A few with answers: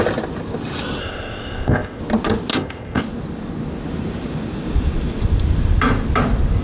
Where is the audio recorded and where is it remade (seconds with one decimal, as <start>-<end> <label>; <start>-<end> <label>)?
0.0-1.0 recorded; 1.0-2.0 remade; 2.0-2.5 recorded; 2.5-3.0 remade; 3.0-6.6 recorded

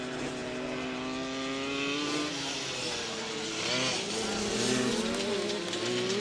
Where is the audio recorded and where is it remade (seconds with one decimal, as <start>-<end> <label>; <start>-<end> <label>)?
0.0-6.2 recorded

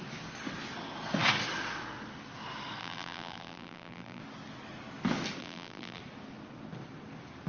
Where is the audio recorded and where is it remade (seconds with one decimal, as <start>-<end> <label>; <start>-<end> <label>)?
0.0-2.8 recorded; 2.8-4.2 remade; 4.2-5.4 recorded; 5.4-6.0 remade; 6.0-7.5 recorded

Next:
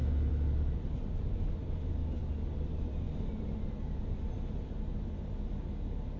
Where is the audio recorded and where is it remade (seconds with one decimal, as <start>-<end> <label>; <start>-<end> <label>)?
0.0-6.2 recorded

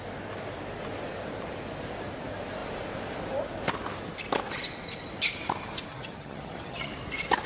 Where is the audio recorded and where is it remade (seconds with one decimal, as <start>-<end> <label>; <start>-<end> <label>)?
0.0-5.9 recorded; 5.9-6.9 remade; 6.9-7.5 recorded